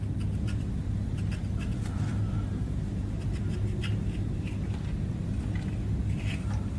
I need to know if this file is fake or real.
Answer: real